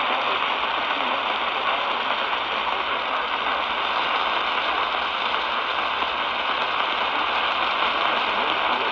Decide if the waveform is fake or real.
real